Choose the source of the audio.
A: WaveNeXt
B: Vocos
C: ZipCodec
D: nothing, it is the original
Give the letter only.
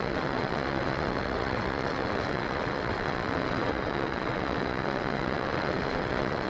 A